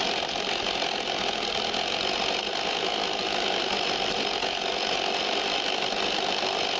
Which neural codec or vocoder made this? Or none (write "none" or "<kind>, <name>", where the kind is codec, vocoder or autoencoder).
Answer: none